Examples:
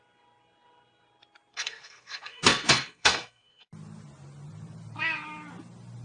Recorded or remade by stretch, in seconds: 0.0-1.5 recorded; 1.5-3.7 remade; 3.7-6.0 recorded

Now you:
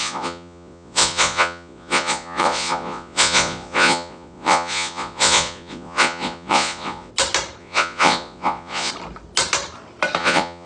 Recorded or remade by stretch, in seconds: 0.0-7.1 remade; 7.1-7.6 recorded; 7.6-8.9 remade; 8.9-10.2 recorded; 10.2-10.7 remade

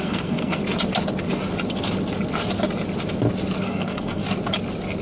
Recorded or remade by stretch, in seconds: 0.0-0.6 remade; 0.6-3.6 recorded; 3.6-4.2 remade; 4.2-5.0 recorded

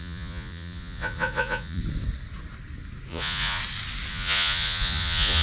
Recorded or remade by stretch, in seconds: 0.0-1.8 remade; 1.8-3.1 recorded; 3.1-3.6 remade; 3.6-4.1 recorded; 4.1-5.4 remade

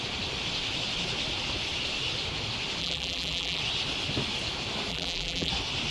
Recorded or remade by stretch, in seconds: 0.0-2.8 recorded; 2.8-3.6 remade; 3.6-4.9 recorded; 4.9-5.5 remade; 5.5-5.9 recorded

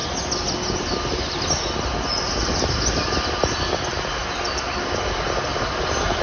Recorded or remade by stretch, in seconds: 0.0-6.2 recorded

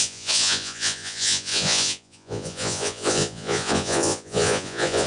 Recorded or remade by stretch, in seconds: 0.0-5.1 remade